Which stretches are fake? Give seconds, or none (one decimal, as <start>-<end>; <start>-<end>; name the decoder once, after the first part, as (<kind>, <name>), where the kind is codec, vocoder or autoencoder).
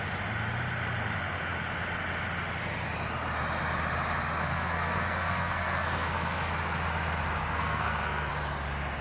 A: 4.4-6.5 (codec, SNAC); 7.4-8.3